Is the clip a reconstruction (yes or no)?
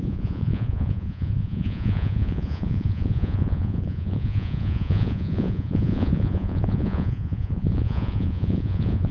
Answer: yes